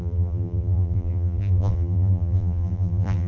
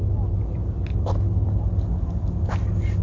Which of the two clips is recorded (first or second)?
second